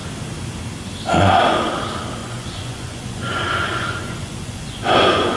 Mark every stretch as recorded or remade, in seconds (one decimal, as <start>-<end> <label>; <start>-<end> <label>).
0.0-2.2 recorded; 2.2-5.4 remade